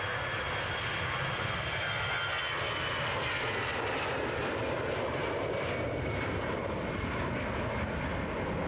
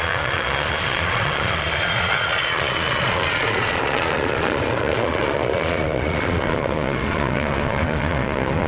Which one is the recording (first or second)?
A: first